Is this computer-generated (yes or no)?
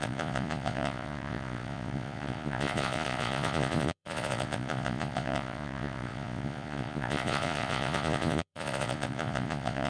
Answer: yes